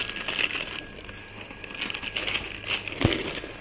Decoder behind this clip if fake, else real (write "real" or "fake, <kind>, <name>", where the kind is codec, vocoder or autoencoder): real